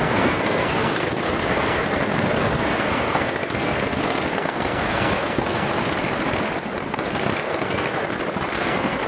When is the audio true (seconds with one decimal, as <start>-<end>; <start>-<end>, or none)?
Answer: 5.7-6.8; 8.0-8.5